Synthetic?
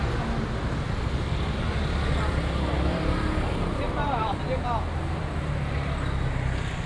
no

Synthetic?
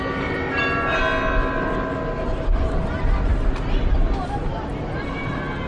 no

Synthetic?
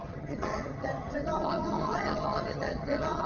yes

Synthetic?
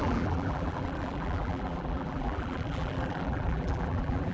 yes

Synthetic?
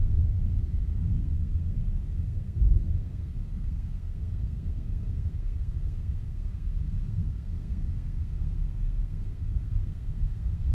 yes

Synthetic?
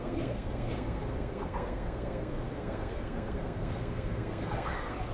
yes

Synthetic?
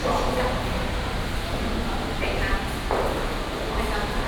no